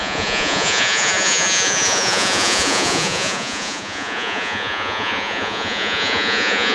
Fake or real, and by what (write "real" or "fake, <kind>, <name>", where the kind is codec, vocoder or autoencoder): fake, vocoder, Vocos